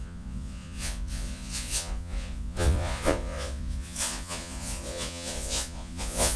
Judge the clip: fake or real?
fake